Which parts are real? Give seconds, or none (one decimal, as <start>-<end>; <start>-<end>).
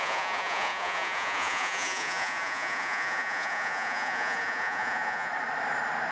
5.3-6.1